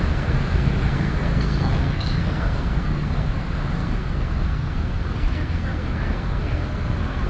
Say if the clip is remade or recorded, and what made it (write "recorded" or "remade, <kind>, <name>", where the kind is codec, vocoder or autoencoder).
remade, codec, SNAC